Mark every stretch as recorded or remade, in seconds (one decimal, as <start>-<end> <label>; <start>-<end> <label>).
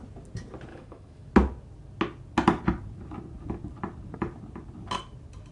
0.0-0.7 recorded; 0.7-1.3 remade; 1.3-5.5 recorded